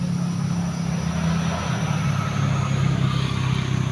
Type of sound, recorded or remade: recorded